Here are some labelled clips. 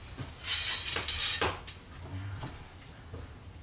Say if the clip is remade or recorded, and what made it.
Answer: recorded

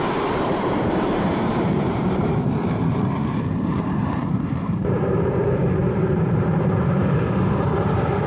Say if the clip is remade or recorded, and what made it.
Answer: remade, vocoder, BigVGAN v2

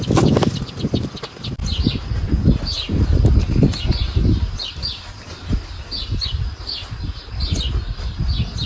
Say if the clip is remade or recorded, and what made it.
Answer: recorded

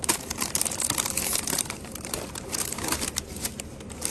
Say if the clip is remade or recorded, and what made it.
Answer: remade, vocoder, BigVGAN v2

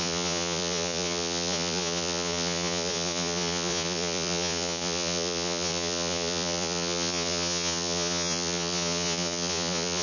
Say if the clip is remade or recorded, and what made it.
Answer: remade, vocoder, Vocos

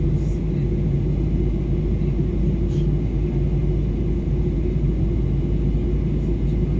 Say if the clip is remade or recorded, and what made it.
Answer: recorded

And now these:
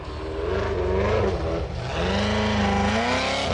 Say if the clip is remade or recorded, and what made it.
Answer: recorded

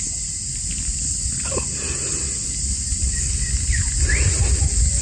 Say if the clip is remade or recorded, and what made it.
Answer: recorded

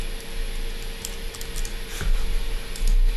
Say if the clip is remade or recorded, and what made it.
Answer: recorded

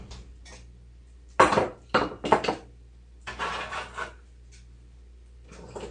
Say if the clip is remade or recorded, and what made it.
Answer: remade, vocoder, BigVGAN v2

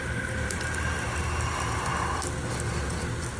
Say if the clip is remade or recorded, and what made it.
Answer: recorded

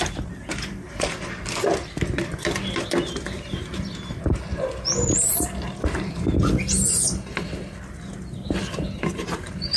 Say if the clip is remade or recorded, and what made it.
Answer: recorded